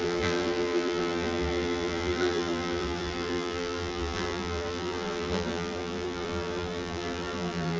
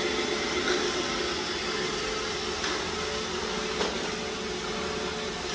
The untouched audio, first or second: second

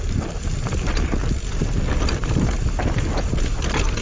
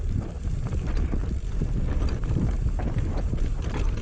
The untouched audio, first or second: first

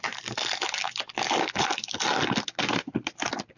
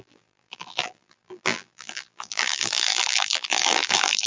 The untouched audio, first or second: first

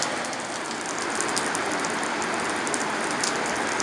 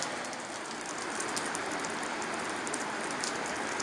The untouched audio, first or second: first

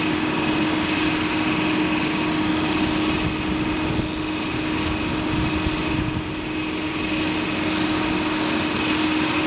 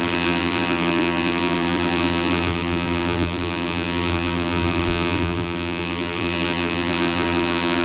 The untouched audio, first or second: first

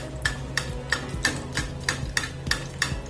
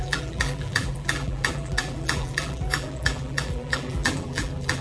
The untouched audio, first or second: first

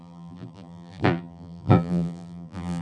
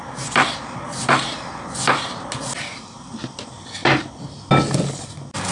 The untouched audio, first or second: second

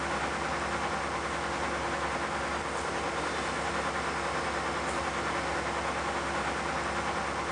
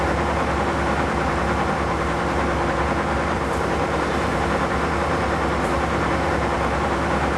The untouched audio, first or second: first